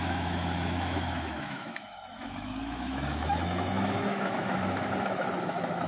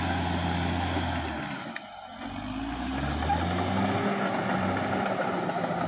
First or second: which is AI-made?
first